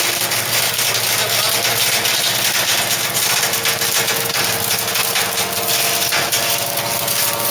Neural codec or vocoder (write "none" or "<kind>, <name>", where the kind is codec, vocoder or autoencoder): none